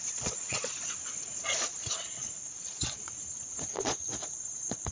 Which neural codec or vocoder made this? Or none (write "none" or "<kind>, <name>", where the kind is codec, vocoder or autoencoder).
vocoder, Vocos